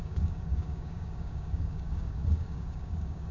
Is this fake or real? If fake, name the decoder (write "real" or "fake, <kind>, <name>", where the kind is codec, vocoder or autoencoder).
fake, codec, DAC